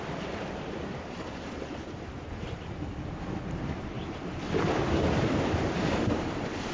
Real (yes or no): yes